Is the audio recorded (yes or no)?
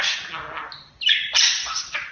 yes